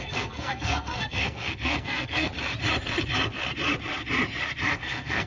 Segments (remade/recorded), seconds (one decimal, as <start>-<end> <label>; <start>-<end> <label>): 0.0-2.3 remade; 2.3-4.7 recorded; 4.7-5.3 remade